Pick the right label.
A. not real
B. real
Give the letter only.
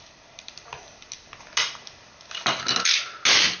B